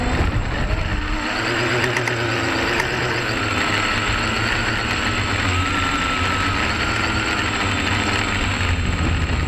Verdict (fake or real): real